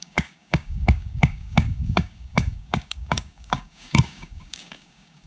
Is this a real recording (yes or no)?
no